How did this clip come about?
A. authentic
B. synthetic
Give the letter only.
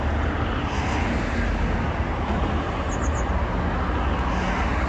A